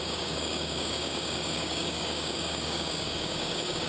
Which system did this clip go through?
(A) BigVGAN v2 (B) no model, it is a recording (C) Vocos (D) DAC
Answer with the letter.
D